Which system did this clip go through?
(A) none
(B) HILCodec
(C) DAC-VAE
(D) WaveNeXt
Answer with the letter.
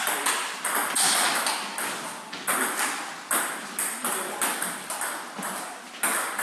A